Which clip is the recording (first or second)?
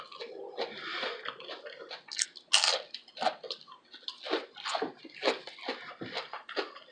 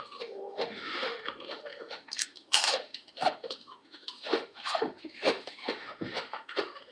first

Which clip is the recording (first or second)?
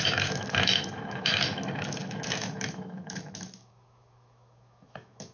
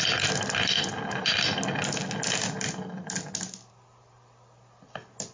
second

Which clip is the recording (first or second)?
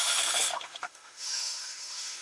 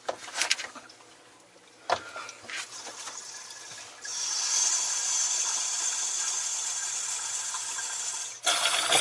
second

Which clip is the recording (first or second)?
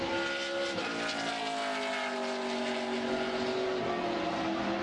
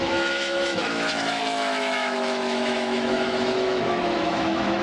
first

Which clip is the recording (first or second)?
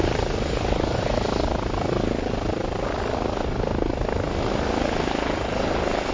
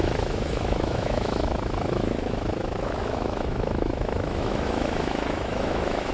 first